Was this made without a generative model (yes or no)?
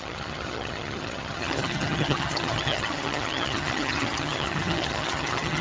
no